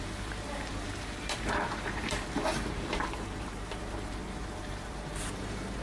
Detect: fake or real fake